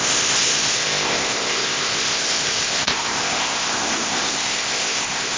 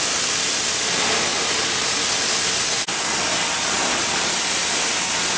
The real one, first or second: second